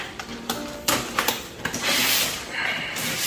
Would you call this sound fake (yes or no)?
yes